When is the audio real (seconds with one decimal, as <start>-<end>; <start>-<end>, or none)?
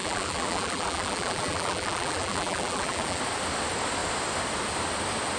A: 3.2-5.4